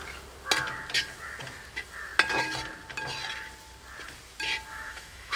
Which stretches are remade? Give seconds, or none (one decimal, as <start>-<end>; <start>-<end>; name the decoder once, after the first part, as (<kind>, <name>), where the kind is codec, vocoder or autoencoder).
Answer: 4.7-5.4 (autoencoder, DAC-VAE)